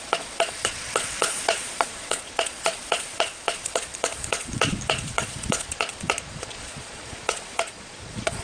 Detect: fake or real fake